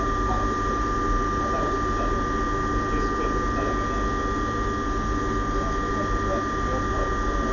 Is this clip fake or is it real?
real